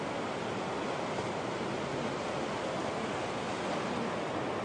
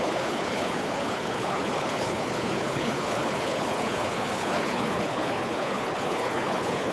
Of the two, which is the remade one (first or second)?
second